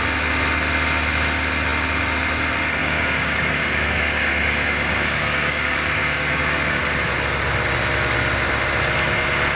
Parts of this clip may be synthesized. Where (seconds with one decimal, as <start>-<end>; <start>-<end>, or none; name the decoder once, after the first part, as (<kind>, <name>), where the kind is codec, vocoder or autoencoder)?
2.8-6.8 (codec, DAC)